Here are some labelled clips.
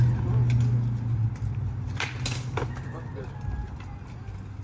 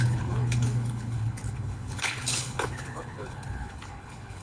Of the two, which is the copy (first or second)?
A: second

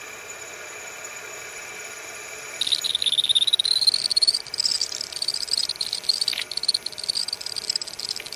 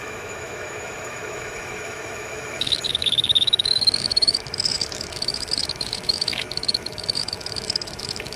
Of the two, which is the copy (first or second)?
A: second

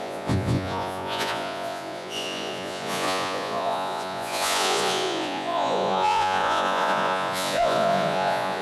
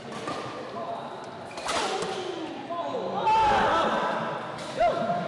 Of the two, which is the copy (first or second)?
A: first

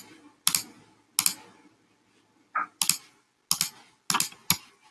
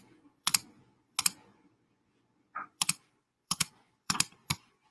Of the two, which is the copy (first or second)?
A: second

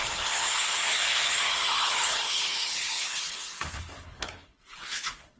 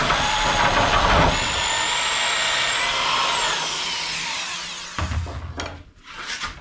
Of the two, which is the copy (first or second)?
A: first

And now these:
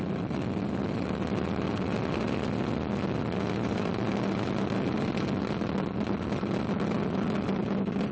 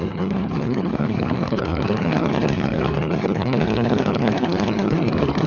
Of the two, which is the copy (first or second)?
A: second